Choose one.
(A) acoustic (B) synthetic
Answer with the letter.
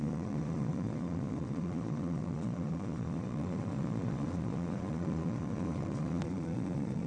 B